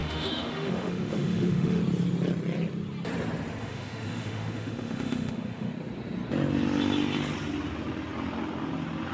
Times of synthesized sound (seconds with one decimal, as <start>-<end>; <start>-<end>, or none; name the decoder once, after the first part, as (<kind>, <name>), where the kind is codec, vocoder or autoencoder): 0.0-1.8 (autoencoder, DAC-VAE); 3.6-5.7